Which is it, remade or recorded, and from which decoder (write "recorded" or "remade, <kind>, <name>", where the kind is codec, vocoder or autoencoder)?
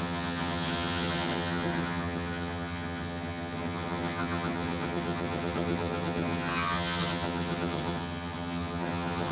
remade, vocoder, HiFi-GAN